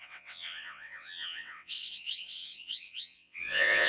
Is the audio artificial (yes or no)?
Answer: yes